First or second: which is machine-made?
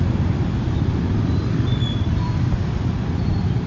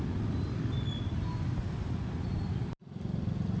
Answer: first